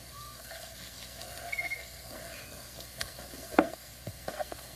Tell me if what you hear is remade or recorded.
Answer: remade